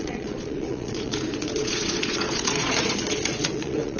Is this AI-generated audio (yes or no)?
yes